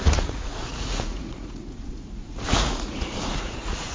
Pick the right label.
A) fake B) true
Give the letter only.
A